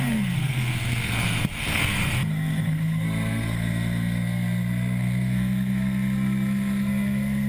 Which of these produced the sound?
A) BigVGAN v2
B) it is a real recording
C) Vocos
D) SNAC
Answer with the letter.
D